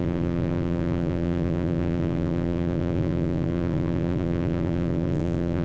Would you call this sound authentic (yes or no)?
no